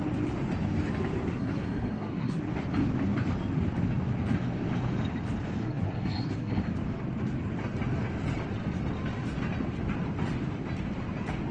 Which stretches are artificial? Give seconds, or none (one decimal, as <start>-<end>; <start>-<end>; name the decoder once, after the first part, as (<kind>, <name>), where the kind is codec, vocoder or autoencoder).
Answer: 1.3-2.4 (codec, SNAC); 5.6-6.7